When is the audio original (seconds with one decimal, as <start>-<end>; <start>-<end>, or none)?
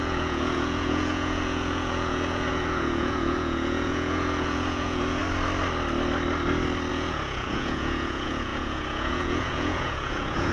5.2-6.9